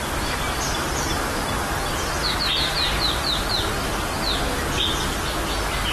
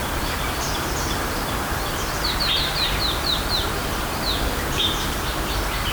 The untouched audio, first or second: first